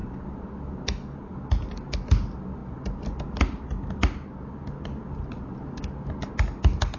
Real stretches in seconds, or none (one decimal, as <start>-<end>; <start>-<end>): 0.0-7.0